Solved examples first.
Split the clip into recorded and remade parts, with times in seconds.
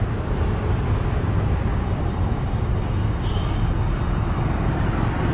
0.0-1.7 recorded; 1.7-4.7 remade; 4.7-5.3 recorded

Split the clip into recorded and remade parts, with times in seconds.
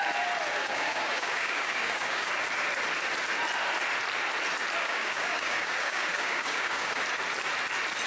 0.0-0.6 recorded; 0.6-2.3 remade; 2.3-4.8 recorded; 4.8-7.0 remade; 7.0-8.1 recorded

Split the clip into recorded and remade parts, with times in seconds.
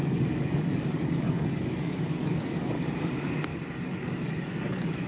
0.0-3.1 remade; 3.1-3.5 recorded; 3.5-5.1 remade